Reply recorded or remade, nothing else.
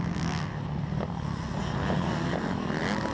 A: recorded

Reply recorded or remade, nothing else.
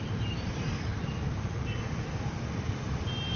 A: recorded